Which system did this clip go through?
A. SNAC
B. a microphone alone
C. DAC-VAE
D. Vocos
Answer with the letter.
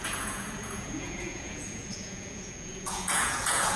D